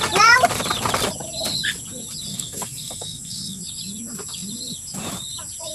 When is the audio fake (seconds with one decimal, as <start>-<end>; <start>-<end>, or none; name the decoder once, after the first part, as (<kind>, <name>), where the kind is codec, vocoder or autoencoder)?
2.3-3.6 (codec, SNAC)